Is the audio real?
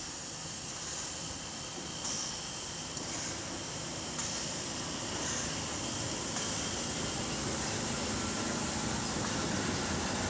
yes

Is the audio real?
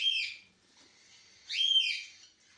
yes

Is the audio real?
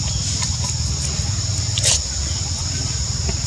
yes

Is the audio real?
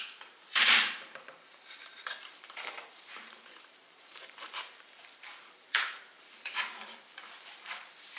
no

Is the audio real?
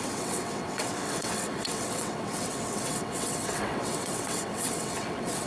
no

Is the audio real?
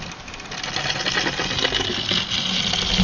yes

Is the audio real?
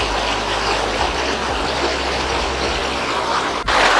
yes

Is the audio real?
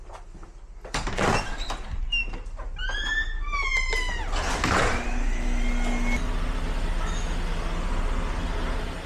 yes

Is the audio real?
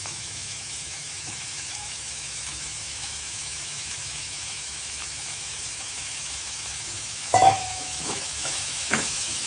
no